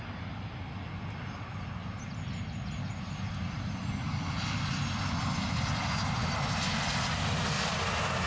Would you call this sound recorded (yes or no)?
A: yes